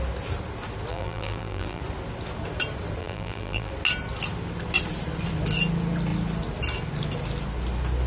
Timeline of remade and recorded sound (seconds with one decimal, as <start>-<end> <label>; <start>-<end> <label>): 0.0-0.9 recorded; 0.9-1.8 remade; 1.8-3.0 recorded; 3.0-3.7 remade; 3.7-8.1 recorded